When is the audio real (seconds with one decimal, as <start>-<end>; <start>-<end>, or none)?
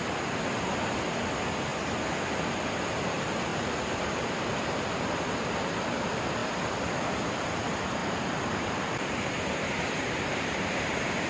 0.0-3.5; 4.2-8.0